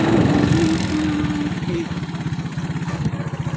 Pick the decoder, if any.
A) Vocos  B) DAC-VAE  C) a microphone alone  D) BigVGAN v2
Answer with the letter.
C